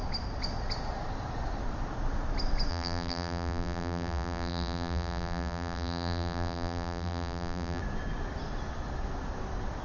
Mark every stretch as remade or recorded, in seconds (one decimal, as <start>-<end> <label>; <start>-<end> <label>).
0.0-2.7 recorded; 2.7-7.8 remade; 7.8-9.8 recorded